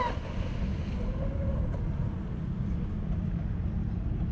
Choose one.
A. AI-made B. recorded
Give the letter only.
B